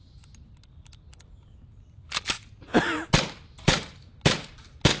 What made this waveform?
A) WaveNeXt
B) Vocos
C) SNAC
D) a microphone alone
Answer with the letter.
D